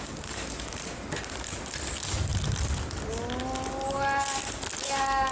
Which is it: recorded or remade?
recorded